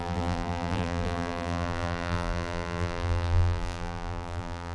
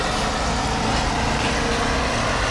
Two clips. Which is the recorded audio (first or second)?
second